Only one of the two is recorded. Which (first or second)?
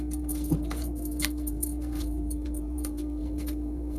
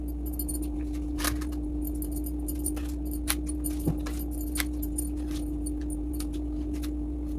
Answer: second